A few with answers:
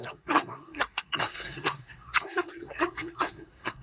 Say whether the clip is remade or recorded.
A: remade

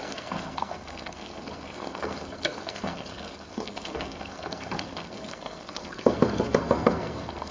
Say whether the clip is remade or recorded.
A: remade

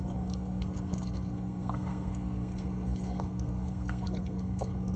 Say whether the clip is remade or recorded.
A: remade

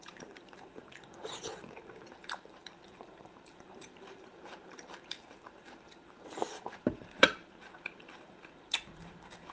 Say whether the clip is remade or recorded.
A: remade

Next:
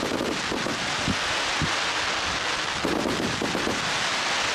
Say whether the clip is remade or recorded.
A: recorded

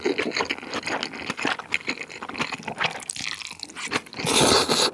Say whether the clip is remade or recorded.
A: recorded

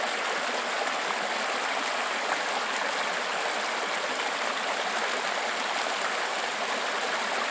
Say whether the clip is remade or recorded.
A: recorded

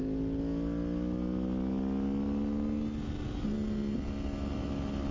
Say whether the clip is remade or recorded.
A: recorded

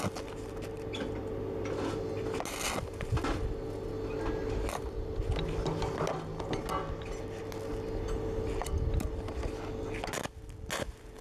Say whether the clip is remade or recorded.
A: recorded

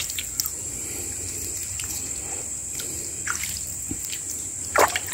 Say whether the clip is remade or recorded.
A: remade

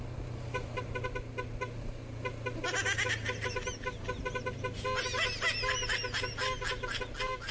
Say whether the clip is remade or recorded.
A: recorded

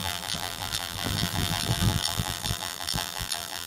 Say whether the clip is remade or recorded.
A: remade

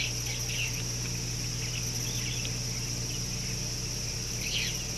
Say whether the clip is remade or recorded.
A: recorded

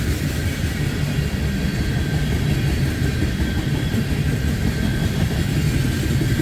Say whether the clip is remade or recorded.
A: recorded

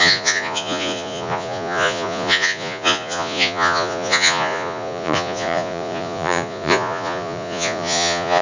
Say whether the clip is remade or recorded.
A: remade